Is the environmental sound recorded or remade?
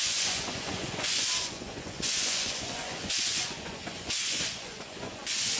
remade